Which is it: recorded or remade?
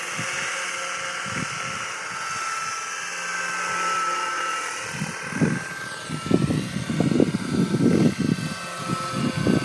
recorded